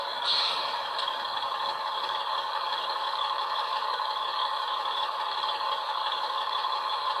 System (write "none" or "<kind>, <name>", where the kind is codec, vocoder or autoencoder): codec, DAC